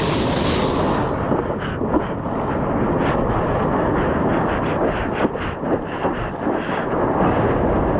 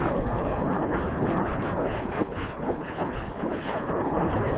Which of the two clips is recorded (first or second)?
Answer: first